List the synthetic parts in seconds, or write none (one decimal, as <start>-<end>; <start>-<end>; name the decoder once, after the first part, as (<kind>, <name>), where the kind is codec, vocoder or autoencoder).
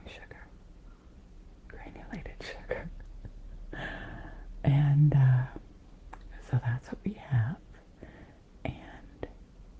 none